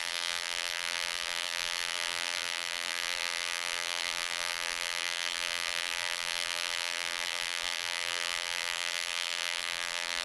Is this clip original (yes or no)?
no